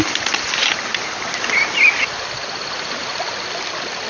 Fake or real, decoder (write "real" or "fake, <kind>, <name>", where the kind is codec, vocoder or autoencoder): real